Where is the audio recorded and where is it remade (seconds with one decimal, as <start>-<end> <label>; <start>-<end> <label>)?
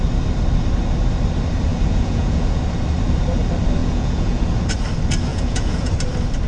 0.0-1.7 recorded; 1.7-2.6 remade; 2.6-3.8 recorded; 3.8-4.4 remade; 4.4-5.3 recorded; 5.3-5.9 remade; 5.9-6.5 recorded